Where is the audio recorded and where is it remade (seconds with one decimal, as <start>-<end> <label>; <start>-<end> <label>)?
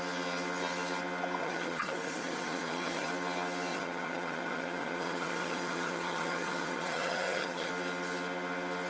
0.0-1.4 recorded; 1.4-3.1 remade; 3.1-3.7 recorded; 3.7-7.7 remade; 7.7-8.9 recorded